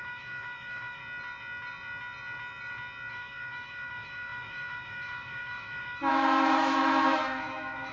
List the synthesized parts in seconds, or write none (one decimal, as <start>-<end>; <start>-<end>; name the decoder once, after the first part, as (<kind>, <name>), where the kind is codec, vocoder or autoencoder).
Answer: 0.0-1.0 (autoencoder, DAC-VAE); 3.1-7.9